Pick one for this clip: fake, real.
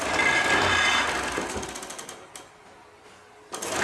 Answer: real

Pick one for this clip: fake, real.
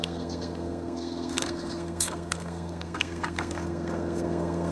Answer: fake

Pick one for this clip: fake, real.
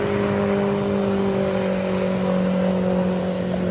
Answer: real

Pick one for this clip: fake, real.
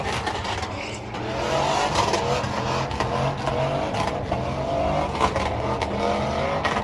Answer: real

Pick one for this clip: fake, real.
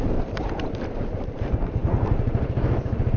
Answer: fake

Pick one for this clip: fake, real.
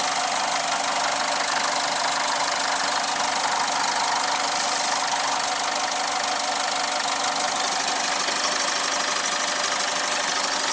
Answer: real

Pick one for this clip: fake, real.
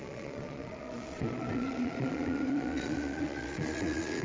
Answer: fake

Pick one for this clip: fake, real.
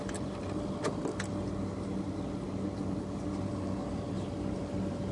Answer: real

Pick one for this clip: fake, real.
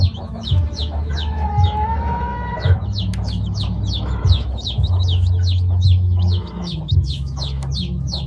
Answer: fake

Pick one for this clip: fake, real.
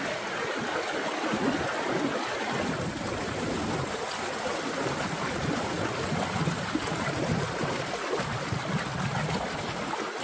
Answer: real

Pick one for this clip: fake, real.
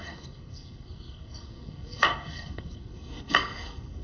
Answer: fake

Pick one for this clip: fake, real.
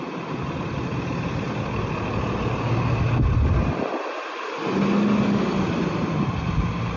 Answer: real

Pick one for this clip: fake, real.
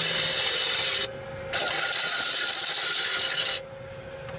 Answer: real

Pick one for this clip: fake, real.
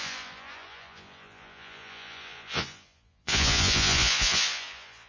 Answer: fake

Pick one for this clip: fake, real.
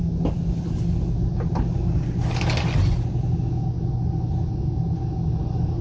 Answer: real